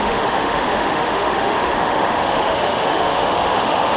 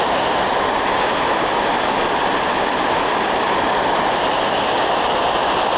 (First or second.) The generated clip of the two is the first